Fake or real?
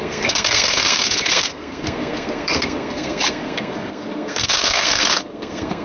fake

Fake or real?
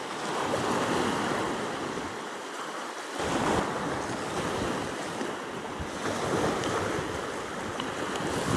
real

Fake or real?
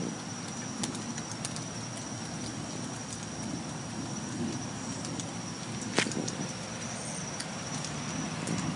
real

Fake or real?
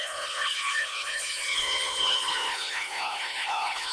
fake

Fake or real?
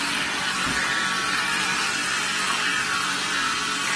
real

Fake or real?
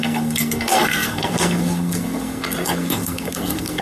fake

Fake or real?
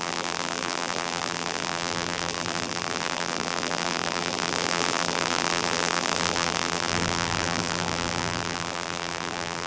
fake